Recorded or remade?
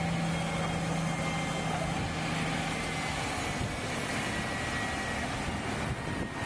recorded